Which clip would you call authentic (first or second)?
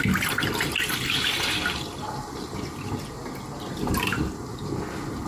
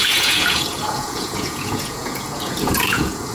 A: first